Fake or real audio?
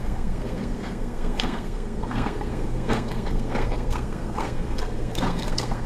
fake